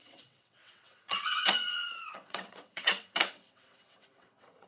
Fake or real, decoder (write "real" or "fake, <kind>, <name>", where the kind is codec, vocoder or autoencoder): fake, vocoder, WaveNeXt